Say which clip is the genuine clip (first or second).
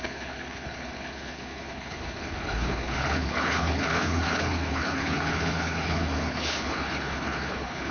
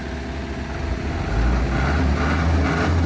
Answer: second